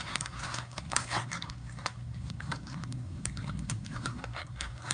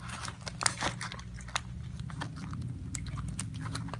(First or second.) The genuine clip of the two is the second